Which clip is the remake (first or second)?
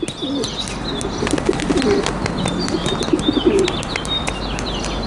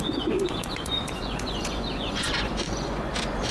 second